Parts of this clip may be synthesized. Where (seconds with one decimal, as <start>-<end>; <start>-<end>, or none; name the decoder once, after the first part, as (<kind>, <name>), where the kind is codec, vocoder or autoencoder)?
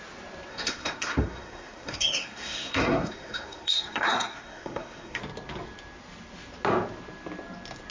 0.5-5.2 (codec, SNAC)